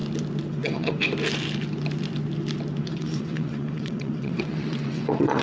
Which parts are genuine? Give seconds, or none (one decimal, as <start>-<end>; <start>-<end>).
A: 0.0-0.5; 1.0-2.8